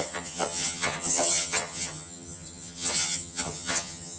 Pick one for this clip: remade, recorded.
remade